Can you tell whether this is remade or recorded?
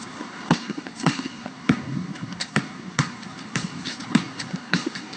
remade